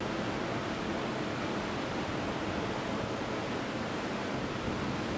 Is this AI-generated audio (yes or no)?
no